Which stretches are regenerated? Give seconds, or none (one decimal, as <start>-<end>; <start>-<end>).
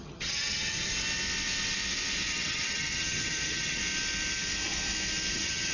0.0-0.9; 2.3-3.8; 5.3-5.7